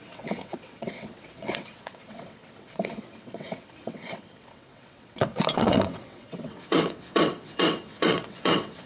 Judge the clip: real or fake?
fake